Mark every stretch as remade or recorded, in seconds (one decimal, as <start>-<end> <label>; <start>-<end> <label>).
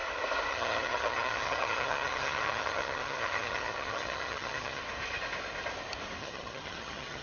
0.0-0.5 recorded; 0.5-4.8 remade; 4.8-6.2 recorded; 6.2-7.2 remade